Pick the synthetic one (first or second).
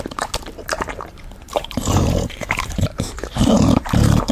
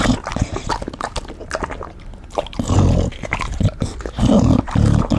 first